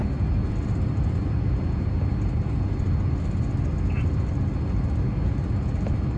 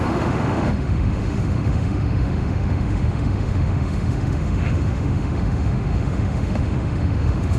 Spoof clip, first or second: second